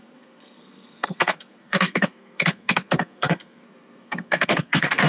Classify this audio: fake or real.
fake